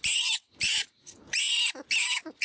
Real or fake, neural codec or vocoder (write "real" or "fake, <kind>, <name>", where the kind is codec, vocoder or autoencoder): real